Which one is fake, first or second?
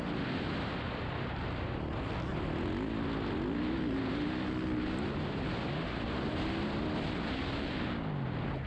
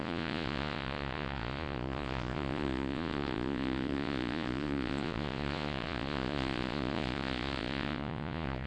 second